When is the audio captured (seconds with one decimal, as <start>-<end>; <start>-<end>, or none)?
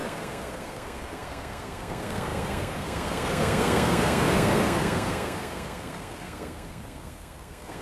none